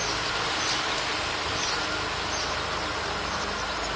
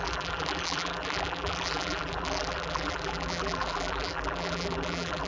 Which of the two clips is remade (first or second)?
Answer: second